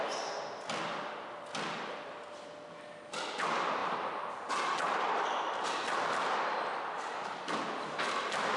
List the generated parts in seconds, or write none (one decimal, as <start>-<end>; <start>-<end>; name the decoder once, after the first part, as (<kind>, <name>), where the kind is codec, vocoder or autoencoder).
none